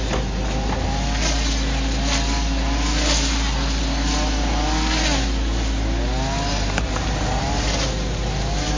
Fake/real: real